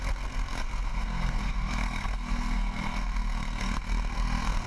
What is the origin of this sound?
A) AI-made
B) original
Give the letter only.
A